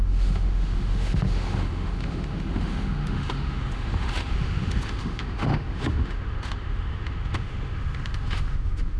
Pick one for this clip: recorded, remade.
remade